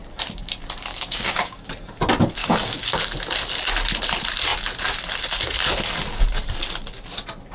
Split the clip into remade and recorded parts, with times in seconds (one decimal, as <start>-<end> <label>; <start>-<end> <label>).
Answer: 0.0-0.9 recorded; 0.9-1.7 remade; 1.7-2.4 recorded; 2.4-3.0 remade; 3.0-7.5 recorded